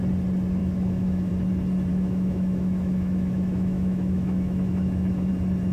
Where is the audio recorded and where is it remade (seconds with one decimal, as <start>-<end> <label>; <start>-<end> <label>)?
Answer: 0.0-0.6 recorded; 0.6-1.3 remade; 1.3-1.9 recorded; 1.9-5.3 remade; 5.3-5.7 recorded

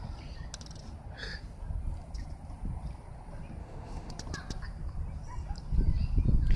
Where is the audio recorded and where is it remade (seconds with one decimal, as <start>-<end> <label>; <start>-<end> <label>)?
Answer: 0.0-3.6 recorded; 3.6-4.1 remade; 4.1-6.6 recorded